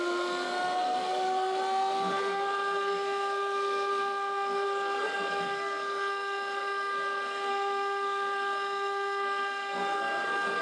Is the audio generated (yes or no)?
yes